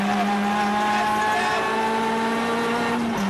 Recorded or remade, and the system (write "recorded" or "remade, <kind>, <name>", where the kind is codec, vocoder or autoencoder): recorded